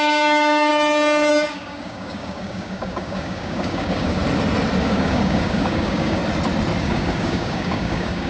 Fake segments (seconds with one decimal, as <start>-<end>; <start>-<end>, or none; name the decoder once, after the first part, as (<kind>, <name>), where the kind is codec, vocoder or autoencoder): 0.0-0.7 (codec, DAC); 1.3-4.2; 4.8-6.2; 6.8-8.3